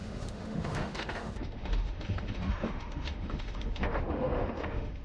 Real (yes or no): no